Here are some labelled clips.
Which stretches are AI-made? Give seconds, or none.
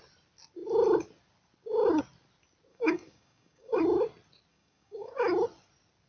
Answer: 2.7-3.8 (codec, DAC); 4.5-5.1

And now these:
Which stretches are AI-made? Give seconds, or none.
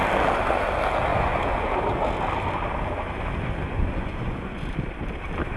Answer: 1.1-1.7 (vocoder, Vocos); 3.7-4.7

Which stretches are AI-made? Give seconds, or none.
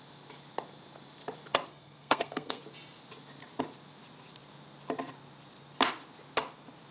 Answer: 1.7-2.6 (codec, SNAC)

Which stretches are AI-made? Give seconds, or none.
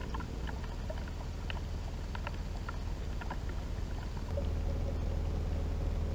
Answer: none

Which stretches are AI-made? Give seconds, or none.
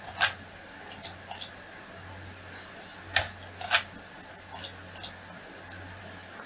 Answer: none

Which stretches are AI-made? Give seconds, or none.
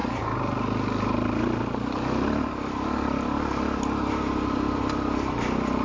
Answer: none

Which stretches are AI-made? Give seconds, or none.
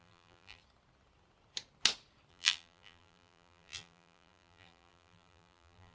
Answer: 0.0-0.6 (vocoder, BigVGAN v2); 2.3-5.9